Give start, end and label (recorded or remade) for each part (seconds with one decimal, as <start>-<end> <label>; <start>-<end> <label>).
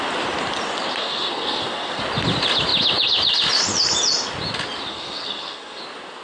0.0-1.0 recorded; 1.0-2.0 remade; 2.0-4.9 recorded; 4.9-5.8 remade; 5.8-6.2 recorded